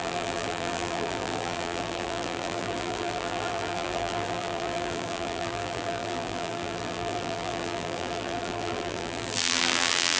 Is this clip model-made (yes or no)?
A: yes